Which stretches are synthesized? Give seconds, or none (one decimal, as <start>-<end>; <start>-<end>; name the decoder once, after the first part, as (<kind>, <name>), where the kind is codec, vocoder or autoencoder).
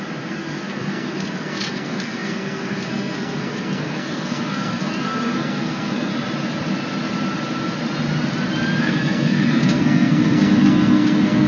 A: 0.0-6.1 (codec, SNAC); 8.8-11.5